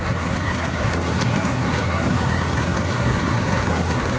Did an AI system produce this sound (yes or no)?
yes